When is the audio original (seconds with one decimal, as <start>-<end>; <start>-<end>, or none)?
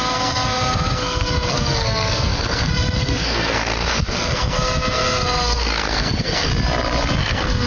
6.5-7.2